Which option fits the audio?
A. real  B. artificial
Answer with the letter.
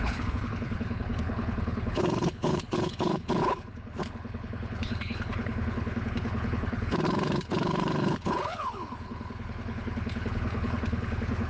B